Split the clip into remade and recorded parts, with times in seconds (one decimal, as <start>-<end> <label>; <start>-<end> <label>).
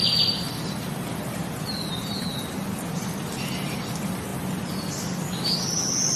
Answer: 0.0-6.2 recorded